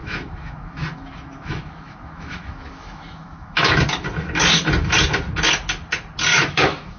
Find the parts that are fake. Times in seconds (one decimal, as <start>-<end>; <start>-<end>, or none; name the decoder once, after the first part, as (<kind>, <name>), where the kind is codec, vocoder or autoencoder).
0.0-3.7 (autoencoder, DAC-VAE); 6.3-7.0